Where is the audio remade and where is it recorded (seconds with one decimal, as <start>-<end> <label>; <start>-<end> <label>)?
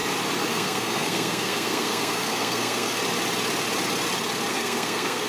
0.0-0.5 recorded; 0.5-3.0 remade; 3.0-4.5 recorded; 4.5-5.3 remade